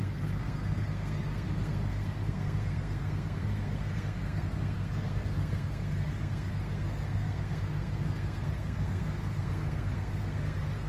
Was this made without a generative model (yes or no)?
no